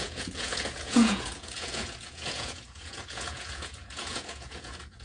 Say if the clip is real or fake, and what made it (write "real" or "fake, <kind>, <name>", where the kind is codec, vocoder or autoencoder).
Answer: fake, vocoder, Vocos